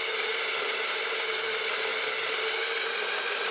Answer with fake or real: real